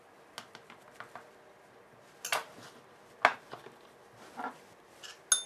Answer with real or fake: real